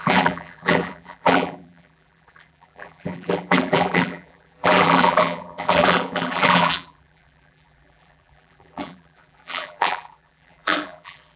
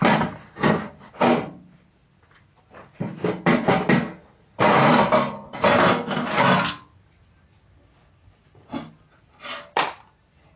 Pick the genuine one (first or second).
second